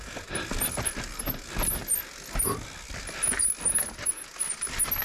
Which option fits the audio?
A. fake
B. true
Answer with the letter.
B